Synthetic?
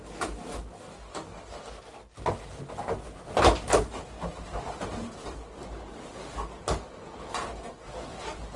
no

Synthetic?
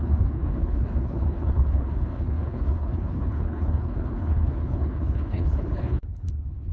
yes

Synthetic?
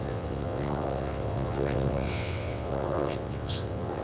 yes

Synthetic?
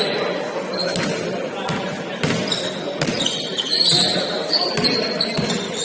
no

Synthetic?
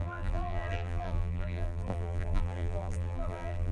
yes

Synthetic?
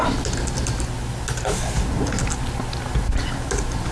no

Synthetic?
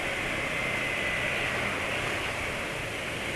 no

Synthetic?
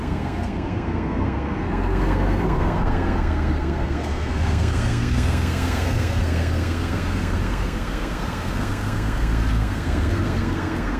yes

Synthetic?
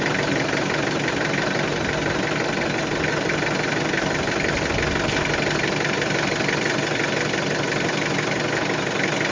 no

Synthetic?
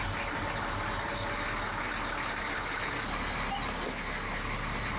no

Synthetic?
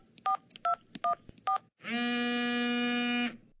no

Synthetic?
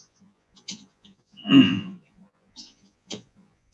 yes